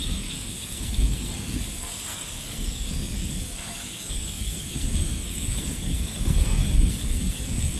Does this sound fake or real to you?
fake